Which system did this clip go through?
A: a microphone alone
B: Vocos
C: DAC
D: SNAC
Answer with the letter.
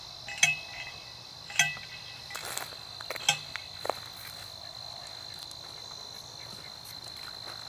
A